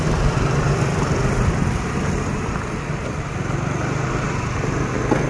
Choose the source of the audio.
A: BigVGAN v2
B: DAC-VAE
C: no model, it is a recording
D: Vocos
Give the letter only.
C